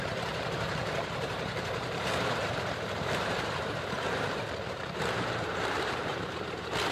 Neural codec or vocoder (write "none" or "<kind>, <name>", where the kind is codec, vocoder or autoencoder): vocoder, BigVGAN v2